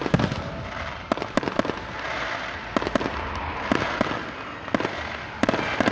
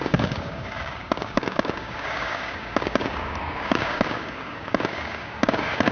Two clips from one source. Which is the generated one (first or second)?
second